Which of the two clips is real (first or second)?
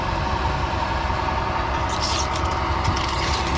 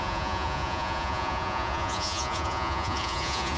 first